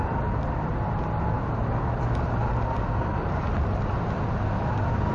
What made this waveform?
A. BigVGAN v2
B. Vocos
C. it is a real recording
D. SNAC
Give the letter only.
C